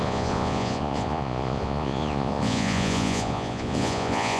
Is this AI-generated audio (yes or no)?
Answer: yes